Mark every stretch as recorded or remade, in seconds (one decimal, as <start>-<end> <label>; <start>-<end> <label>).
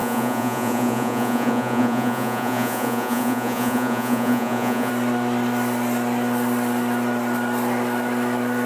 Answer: 0.0-4.9 remade; 4.9-8.7 recorded